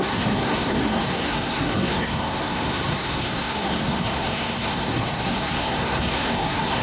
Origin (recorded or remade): remade